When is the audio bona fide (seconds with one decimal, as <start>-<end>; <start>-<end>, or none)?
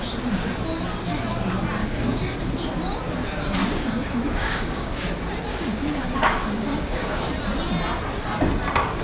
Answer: 0.0-1.8; 2.4-3.6; 5.1-5.5; 7.3-9.0